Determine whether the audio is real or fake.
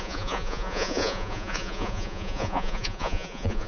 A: fake